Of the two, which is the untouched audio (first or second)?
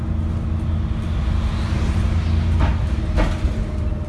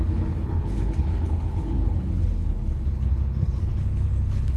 first